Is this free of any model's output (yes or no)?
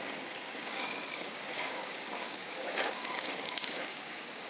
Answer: no